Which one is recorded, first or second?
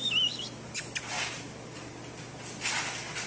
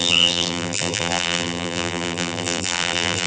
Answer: first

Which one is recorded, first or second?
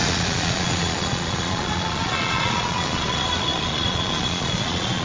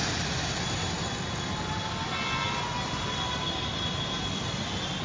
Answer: second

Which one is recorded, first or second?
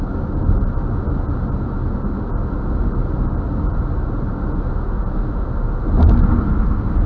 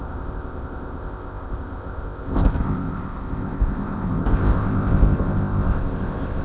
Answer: first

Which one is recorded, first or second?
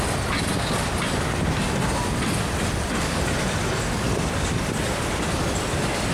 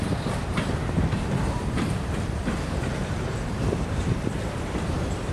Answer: first